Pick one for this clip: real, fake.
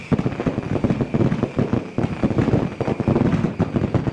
real